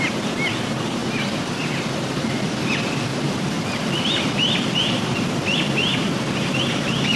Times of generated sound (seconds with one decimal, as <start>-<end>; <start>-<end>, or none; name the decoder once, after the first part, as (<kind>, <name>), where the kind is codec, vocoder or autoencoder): 1.0-5.3 (vocoder, BigVGAN v2)